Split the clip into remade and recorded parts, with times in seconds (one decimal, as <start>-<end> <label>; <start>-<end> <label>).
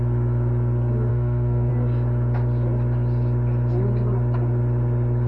0.0-1.1 recorded; 1.1-1.7 remade; 1.7-5.3 recorded